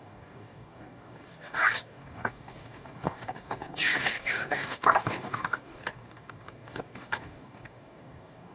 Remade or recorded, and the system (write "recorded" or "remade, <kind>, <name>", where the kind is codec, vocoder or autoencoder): remade, codec, DAC